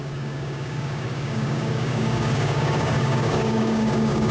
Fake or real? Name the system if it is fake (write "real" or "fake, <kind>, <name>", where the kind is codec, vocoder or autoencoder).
fake, codec, DAC